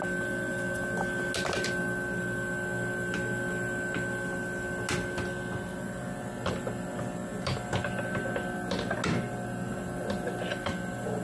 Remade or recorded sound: recorded